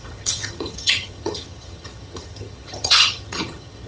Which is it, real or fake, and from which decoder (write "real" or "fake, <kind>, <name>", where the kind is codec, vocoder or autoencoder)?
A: fake, vocoder, HiFi-GAN